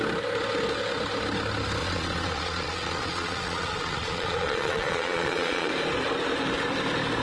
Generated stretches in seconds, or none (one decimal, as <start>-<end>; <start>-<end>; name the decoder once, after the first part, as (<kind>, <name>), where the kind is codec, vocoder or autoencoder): 1.8-5.7 (vocoder, Vocos)